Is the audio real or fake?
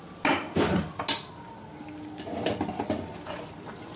real